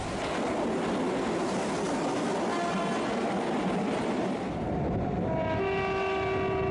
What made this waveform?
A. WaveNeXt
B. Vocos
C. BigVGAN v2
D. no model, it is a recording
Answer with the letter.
D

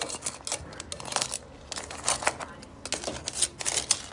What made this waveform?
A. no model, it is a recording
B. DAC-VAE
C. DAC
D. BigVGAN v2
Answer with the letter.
A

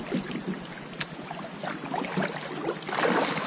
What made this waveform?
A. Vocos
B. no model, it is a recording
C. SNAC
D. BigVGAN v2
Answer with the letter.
B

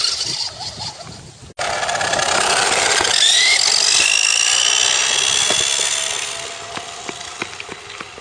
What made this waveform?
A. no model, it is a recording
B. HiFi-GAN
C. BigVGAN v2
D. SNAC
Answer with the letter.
A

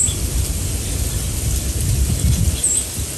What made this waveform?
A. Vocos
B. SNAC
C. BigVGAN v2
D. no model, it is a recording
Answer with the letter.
D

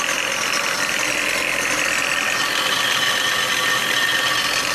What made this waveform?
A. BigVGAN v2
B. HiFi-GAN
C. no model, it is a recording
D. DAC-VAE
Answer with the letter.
C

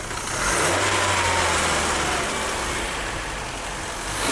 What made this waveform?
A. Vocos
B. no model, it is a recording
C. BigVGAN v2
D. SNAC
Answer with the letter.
B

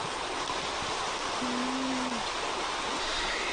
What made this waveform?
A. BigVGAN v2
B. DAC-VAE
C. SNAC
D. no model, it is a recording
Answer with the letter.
D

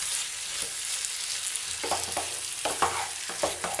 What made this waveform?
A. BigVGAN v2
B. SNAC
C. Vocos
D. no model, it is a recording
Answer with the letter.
D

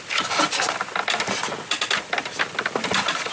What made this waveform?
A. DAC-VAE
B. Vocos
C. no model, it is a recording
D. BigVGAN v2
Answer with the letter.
C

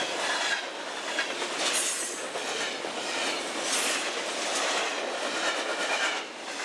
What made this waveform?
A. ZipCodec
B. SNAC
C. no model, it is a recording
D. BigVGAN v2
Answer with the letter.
C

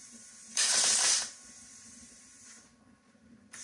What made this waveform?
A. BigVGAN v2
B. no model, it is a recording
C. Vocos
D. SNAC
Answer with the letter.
A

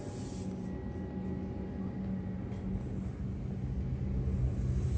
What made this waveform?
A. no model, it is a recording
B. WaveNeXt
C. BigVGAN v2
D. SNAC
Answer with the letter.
A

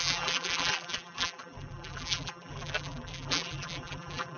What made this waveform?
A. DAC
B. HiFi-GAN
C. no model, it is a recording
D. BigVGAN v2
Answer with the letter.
D